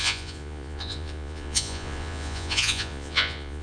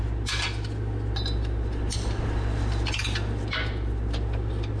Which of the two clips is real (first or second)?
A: second